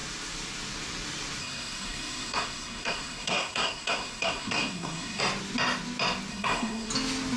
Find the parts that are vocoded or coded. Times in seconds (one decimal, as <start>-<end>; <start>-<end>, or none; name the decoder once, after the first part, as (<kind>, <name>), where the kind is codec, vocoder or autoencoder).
1.4-5.2 (codec, SNAC); 6.3-6.9